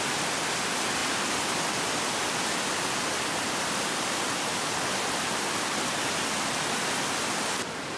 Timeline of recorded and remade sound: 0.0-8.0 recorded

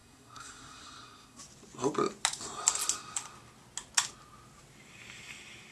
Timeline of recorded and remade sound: 0.0-1.4 remade; 1.4-5.7 recorded